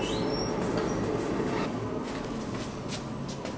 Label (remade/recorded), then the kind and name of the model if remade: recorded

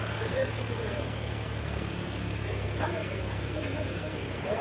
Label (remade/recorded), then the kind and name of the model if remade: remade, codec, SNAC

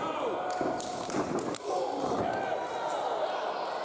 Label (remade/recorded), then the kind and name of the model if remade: recorded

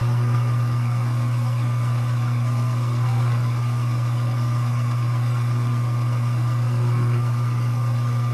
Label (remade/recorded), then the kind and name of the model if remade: remade, codec, SNAC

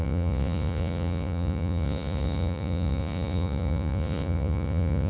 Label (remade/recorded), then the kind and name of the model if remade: remade, vocoder, Vocos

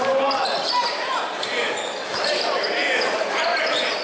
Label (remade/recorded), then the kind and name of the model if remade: remade, vocoder, BigVGAN v2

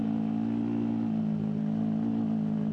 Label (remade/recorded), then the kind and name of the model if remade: recorded